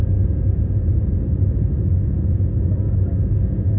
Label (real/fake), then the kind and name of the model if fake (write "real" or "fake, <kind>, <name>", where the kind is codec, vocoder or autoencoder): real